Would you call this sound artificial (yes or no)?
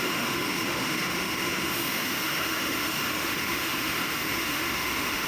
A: yes